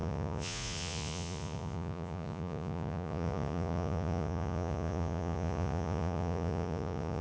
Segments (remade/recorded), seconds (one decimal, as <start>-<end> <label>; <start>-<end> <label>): 0.0-7.2 remade